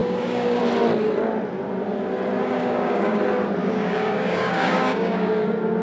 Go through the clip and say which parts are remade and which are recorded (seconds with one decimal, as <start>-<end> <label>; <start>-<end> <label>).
0.0-0.6 remade; 0.6-2.4 recorded; 2.4-3.2 remade; 3.2-3.6 recorded; 3.6-5.3 remade; 5.3-5.8 recorded